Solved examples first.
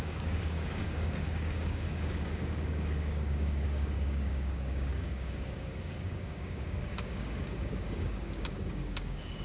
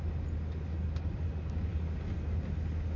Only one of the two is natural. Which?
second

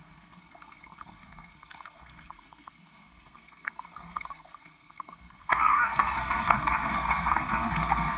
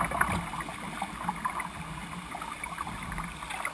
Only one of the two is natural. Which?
second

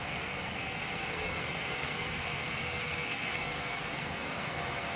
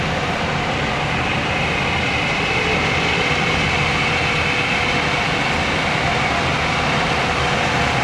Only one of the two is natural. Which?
second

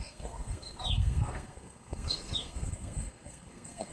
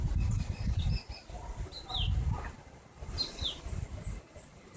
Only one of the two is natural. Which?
second